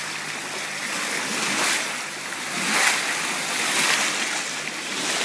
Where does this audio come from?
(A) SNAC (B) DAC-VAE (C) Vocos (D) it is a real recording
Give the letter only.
D